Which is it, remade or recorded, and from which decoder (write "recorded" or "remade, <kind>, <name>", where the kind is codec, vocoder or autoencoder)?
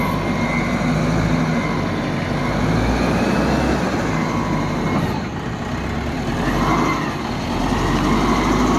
recorded